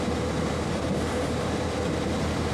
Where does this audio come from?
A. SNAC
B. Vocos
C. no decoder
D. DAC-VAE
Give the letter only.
C